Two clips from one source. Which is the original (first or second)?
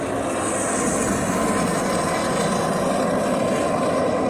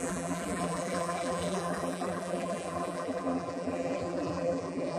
first